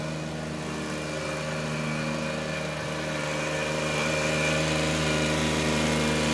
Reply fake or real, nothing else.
real